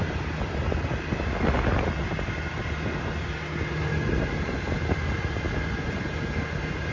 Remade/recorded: recorded